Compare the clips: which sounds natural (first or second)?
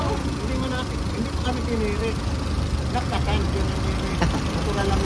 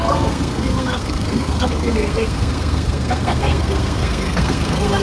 first